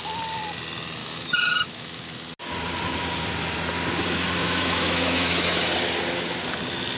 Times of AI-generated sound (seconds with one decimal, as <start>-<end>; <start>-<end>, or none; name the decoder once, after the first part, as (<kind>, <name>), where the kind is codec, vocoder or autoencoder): 1.0-2.1 (autoencoder, DAC-VAE); 4.4-5.6